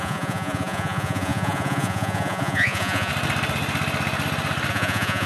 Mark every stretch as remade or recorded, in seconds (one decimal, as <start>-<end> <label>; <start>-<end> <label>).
0.0-3.1 remade; 3.1-4.7 recorded; 4.7-5.3 remade